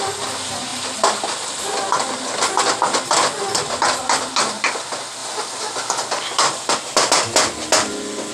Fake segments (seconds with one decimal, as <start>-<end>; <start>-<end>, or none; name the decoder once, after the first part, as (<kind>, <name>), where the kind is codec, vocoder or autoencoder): 5.2-6.7 (vocoder, BigVGAN v2)